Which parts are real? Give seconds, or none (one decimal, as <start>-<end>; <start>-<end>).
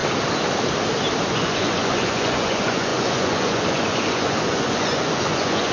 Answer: 0.0-1.3